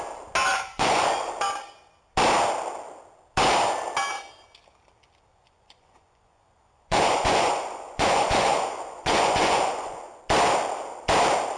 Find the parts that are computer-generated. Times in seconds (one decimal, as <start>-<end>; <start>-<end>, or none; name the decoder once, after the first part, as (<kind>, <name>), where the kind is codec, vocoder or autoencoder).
0.5-1.3 (vocoder, Vocos); 5.3-10.2